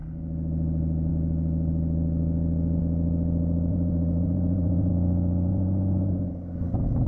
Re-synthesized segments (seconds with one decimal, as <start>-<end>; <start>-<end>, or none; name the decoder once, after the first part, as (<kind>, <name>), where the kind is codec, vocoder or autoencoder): 3.7-4.9 (vocoder, Vocos); 5.5-6.3